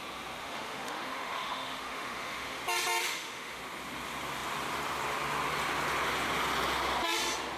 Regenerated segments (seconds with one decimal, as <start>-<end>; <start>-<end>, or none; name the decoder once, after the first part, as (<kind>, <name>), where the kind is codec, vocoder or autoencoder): 0.4-2.6 (autoencoder, DAC-VAE); 3.0-3.6